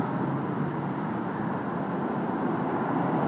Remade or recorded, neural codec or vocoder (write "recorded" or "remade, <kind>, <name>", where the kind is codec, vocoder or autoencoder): recorded